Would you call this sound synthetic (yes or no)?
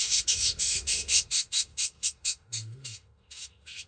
yes